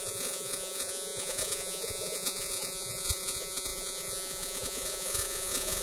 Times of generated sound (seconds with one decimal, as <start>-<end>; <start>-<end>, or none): 0.0-5.8